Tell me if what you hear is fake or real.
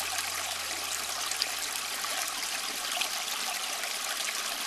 real